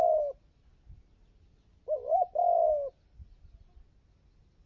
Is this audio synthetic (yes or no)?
no